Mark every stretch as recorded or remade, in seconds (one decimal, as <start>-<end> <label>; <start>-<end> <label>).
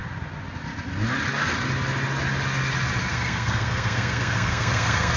0.0-3.1 recorded; 3.1-5.2 remade